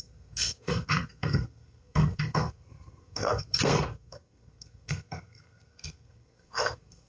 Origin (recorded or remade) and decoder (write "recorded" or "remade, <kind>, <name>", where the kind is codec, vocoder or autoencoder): remade, codec, SNAC